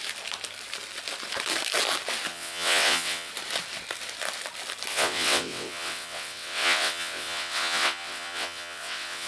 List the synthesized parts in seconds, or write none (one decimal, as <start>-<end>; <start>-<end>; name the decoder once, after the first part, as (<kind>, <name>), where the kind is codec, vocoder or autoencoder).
2.3-3.3 (vocoder, WaveNeXt); 4.9-9.3